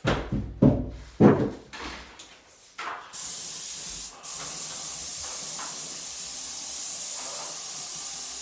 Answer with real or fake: real